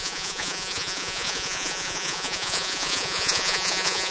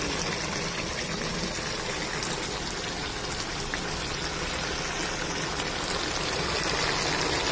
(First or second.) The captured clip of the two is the second